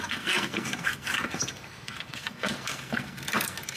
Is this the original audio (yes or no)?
no